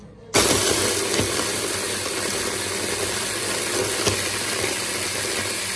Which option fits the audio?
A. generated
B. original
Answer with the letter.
B